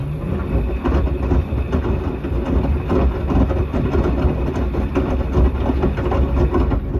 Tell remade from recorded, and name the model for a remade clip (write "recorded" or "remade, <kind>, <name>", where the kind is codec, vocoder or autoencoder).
recorded